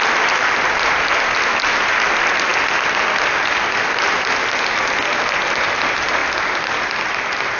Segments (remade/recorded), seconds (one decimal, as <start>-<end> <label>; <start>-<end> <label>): 0.0-7.6 recorded